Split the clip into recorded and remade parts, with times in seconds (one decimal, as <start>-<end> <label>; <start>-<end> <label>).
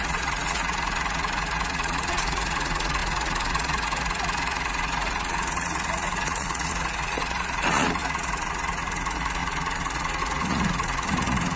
0.0-11.6 remade